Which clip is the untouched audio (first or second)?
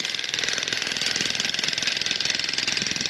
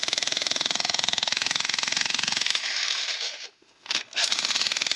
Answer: first